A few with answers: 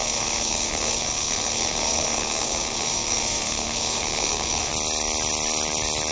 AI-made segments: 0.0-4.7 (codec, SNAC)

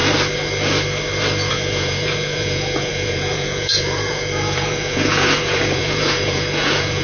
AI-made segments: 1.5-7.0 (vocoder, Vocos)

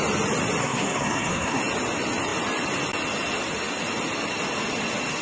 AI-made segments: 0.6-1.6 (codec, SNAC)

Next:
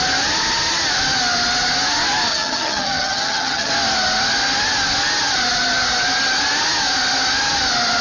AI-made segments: 2.3-3.7 (vocoder, HiFi-GAN)

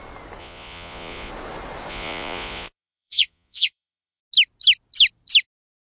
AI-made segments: 0.4-1.3 (vocoder, Vocos); 1.9-4.2

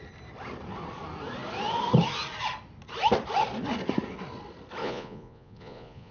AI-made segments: 4.8-6.1 (vocoder, Vocos)